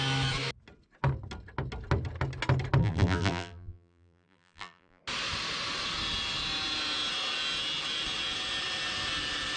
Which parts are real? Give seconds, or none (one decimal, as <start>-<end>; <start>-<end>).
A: 0.0-2.8; 5.0-9.6